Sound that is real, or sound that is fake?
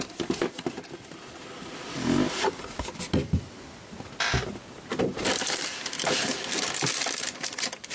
real